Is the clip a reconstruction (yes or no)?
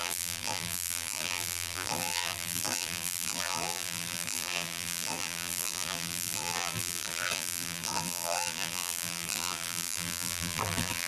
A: yes